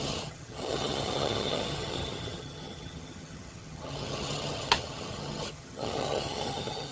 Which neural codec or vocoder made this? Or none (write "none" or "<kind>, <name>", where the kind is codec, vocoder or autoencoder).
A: vocoder, HiFi-GAN